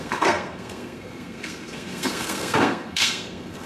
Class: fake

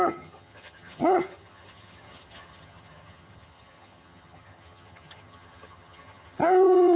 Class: fake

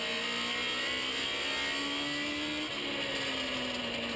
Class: real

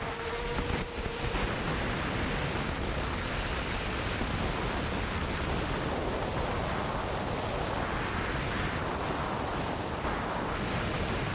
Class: real